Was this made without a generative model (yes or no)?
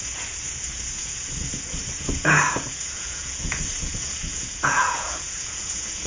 no